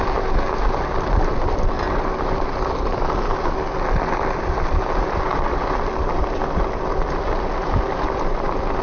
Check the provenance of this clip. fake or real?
real